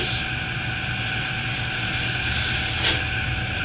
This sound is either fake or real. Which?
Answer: real